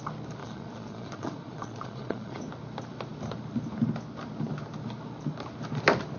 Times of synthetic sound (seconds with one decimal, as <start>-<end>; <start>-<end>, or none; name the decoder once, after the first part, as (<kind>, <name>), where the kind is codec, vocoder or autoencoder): 0.4-2.4 (vocoder, Vocos)